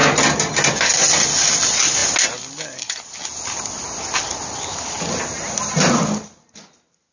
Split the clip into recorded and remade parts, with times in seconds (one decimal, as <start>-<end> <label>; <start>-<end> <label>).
0.0-7.1 recorded